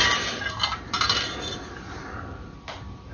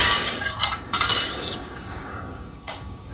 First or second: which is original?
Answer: first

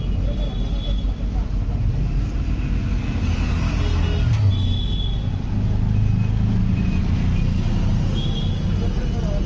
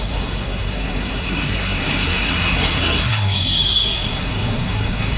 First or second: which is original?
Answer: first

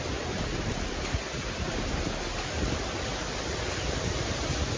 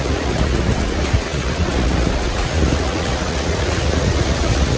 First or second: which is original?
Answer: first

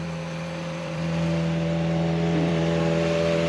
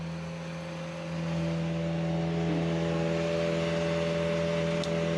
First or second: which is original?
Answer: second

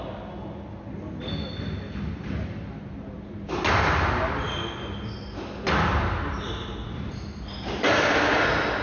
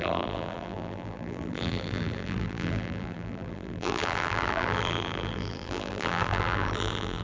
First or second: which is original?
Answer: first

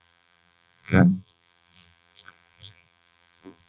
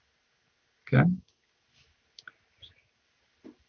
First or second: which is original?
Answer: second